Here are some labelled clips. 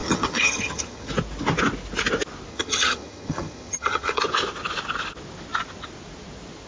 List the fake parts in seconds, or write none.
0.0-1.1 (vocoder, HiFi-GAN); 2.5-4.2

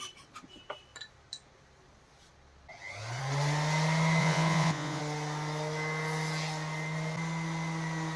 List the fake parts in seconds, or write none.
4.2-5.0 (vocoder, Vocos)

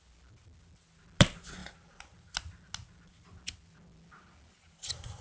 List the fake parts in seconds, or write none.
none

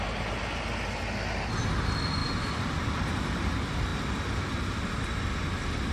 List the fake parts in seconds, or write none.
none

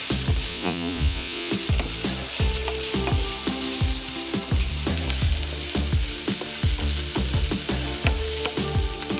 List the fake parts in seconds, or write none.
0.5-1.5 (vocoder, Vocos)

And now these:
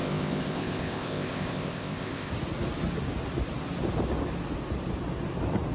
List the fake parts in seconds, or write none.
0.0-2.3 (codec, ZipCodec)

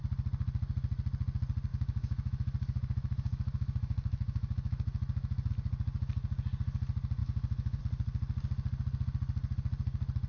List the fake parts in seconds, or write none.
1.7-5.5 (autoencoder, DAC-VAE); 7.2-7.8

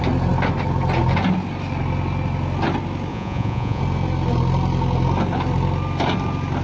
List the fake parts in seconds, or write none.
3.1-3.8 (vocoder, Vocos)